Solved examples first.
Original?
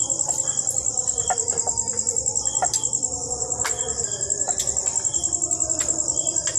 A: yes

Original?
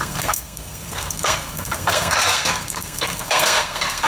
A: no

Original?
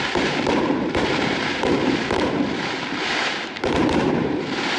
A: no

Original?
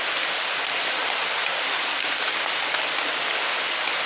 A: yes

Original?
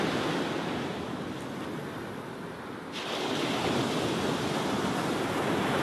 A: no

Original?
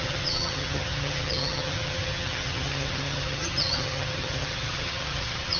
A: no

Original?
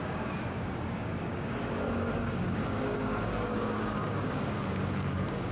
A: no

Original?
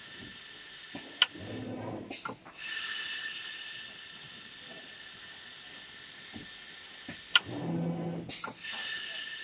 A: yes